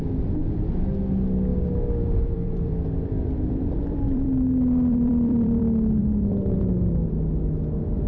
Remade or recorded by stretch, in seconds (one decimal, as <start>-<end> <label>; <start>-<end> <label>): 0.0-1.5 recorded; 1.5-5.6 remade; 5.6-6.0 recorded; 6.0-6.6 remade; 6.6-8.1 recorded